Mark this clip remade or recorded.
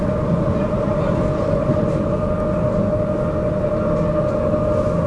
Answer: recorded